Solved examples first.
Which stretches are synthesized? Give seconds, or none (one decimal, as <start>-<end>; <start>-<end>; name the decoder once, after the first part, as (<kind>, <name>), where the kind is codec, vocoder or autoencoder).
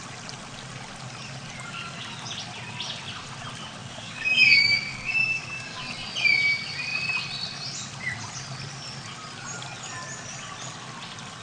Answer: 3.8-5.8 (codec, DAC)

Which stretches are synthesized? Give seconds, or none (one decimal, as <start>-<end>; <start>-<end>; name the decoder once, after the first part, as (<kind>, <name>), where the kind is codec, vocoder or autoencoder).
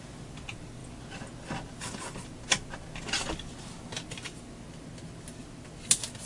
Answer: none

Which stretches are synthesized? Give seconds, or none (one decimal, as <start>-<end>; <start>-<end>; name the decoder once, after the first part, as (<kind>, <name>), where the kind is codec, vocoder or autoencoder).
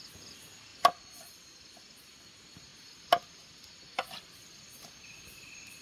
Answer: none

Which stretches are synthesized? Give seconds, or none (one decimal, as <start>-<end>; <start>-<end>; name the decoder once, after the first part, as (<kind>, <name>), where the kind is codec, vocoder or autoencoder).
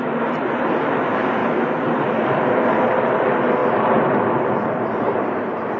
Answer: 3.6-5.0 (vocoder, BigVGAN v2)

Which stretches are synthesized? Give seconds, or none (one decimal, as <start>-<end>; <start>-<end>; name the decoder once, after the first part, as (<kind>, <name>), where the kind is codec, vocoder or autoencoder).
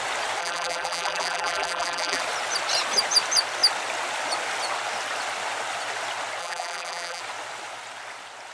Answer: 0.4-2.2 (vocoder, BigVGAN v2); 6.4-7.2